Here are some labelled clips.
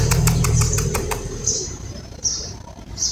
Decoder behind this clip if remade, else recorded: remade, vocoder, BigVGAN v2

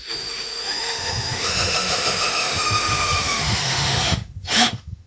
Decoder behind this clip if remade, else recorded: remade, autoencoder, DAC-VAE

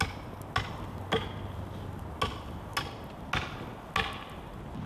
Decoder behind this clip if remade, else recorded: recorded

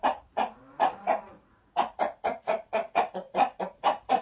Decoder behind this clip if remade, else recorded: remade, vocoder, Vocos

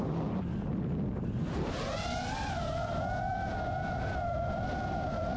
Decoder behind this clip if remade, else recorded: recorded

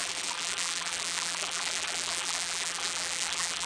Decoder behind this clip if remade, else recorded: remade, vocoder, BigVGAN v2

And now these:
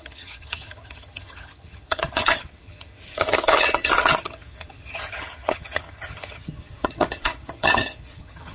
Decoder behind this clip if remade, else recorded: remade, vocoder, HiFi-GAN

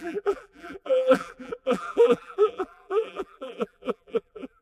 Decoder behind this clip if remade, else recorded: remade, vocoder, BigVGAN v2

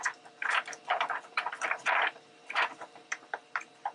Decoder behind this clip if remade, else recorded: remade, vocoder, BigVGAN v2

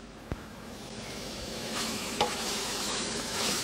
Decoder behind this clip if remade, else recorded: remade, autoencoder, DAC-VAE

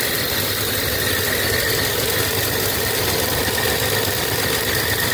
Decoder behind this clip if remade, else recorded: recorded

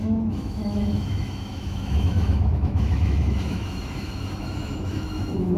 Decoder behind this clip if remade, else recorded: remade, autoencoder, DAC-VAE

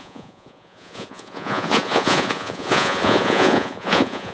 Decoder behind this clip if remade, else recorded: remade, vocoder, Vocos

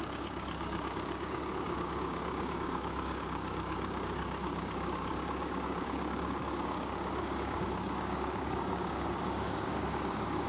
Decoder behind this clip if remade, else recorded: remade, codec, DAC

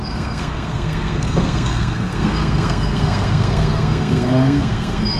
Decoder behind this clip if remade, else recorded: remade, codec, SNAC